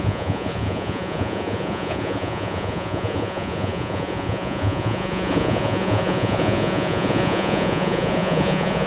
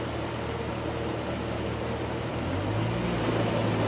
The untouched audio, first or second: second